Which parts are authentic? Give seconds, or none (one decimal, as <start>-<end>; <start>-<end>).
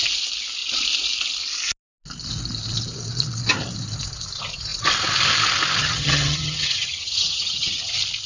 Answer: 0.0-5.8; 7.9-8.3